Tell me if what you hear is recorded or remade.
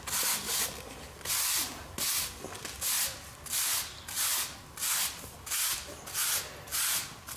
recorded